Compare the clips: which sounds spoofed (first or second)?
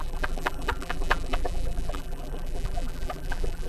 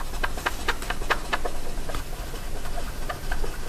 first